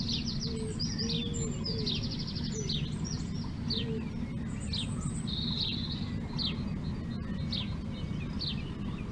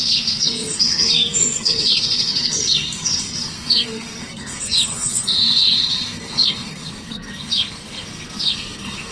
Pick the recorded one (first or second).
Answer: first